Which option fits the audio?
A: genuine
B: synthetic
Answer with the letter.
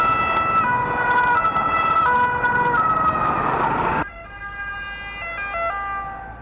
A